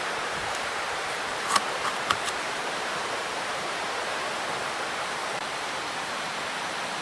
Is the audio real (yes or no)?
no